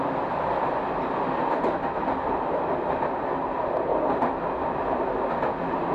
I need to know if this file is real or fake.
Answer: real